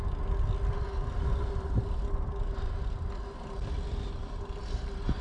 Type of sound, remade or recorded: recorded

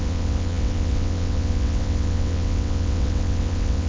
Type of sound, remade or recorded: remade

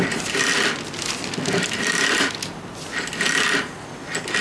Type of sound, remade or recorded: recorded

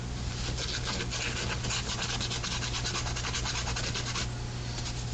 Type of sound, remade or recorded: recorded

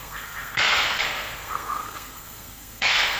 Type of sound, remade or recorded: remade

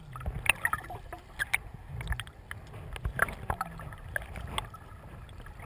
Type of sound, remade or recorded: recorded